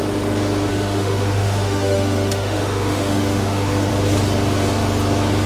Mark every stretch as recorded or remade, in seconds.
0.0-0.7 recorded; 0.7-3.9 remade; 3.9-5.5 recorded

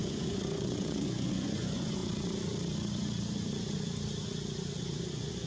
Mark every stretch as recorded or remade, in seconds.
0.0-2.0 remade; 2.0-5.0 recorded; 5.0-5.5 remade

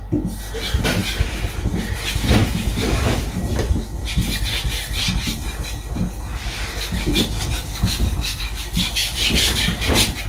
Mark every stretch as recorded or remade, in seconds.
0.0-2.4 recorded; 2.4-3.2 remade; 3.2-6.3 recorded; 6.3-9.9 remade; 9.9-10.3 recorded

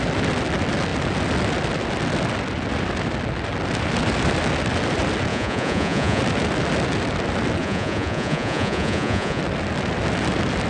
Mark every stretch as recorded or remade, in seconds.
0.0-5.3 recorded; 5.3-6.2 remade; 6.2-7.6 recorded; 7.6-9.4 remade; 9.4-10.7 recorded

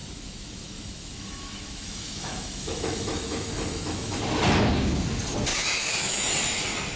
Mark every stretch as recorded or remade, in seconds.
0.0-4.2 remade; 4.2-5.5 recorded; 5.5-6.3 remade; 6.3-7.0 recorded